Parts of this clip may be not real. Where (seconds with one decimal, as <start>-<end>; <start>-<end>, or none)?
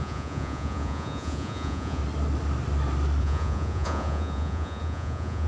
0.0-2.0; 3.2-5.5